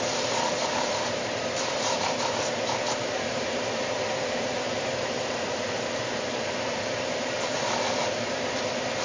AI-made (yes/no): yes